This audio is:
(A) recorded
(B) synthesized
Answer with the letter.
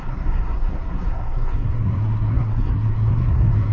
B